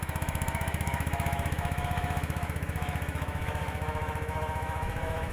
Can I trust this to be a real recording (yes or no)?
no